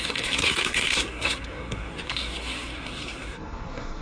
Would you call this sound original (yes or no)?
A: no